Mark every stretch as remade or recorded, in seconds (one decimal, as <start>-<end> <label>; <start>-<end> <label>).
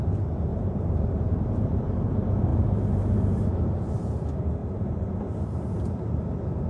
0.0-0.5 recorded; 0.5-1.9 remade; 1.9-2.5 recorded; 2.5-3.7 remade; 3.7-4.6 recorded; 4.6-6.3 remade; 6.3-6.7 recorded